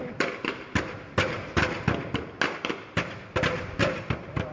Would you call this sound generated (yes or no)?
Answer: no